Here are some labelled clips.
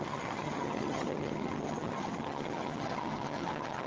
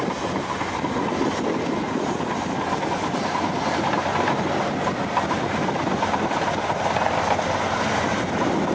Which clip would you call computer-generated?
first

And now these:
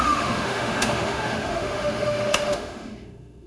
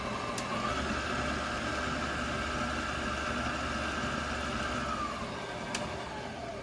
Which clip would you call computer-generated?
first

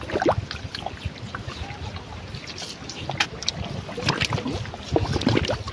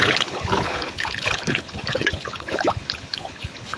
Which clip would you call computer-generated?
second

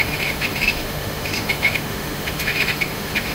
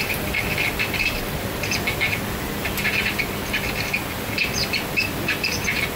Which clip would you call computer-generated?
first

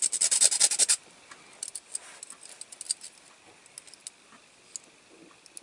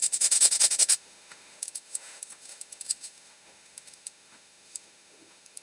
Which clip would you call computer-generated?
second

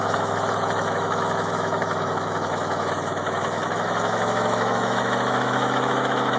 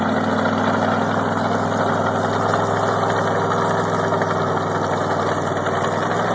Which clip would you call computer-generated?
first